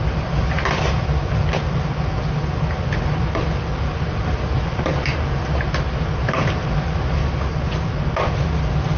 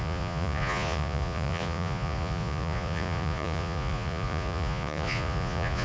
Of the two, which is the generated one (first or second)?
second